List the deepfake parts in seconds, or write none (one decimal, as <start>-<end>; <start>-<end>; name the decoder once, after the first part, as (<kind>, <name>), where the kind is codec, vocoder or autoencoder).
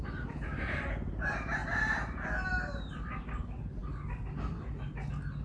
none